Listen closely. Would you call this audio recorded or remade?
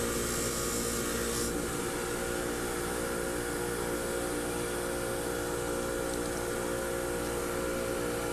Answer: recorded